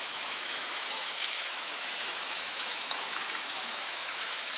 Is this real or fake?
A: fake